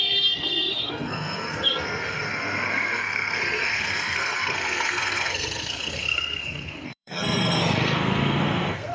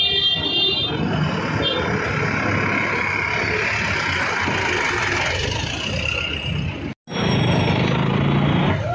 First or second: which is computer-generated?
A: first